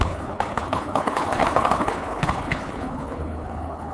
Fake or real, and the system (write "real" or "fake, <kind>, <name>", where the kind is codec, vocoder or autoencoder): fake, codec, HILCodec